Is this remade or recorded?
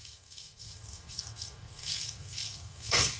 remade